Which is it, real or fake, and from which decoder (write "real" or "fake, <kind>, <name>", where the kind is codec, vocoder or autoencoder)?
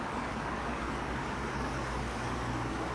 fake, codec, DAC